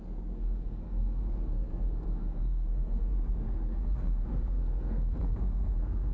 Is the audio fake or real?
fake